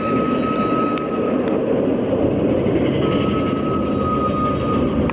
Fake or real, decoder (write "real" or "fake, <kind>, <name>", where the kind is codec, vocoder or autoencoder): real